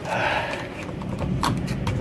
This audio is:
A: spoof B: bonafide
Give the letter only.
B